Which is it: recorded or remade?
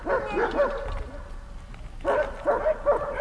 recorded